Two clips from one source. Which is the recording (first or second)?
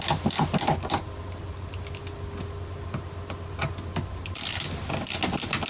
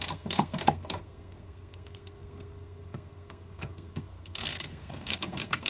first